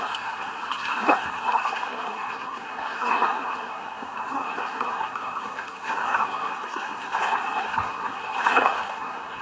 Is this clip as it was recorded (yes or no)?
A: no